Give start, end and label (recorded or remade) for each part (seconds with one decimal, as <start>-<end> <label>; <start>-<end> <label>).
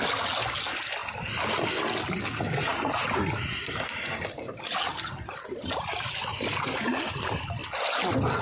0.0-6.2 recorded; 6.2-7.0 remade; 7.0-8.4 recorded